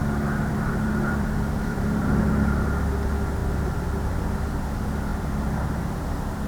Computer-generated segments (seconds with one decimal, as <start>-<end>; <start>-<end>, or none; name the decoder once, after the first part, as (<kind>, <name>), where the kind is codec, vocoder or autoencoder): 0.0-2.2 (vocoder, BigVGAN v2); 3.4-4.3; 5.1-5.7